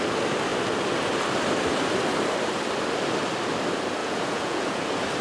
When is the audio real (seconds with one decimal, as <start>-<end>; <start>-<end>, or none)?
0.0-4.0; 4.8-5.2

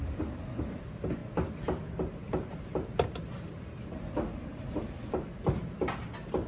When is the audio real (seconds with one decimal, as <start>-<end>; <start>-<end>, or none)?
0.0-6.5